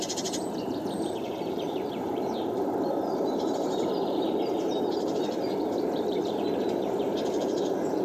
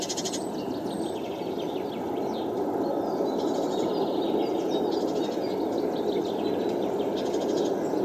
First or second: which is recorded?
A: second